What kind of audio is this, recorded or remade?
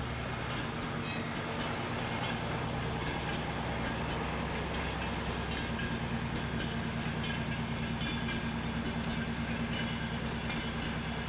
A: recorded